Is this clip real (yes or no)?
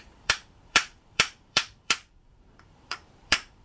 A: no